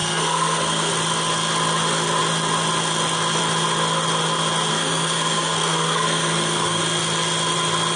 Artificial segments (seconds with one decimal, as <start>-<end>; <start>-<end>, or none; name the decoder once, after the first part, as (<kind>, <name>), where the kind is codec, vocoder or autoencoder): 0.0-0.9 (codec, SNAC); 4.7-6.8